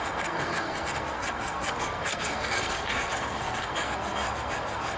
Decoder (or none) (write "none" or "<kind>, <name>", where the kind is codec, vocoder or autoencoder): codec, SNAC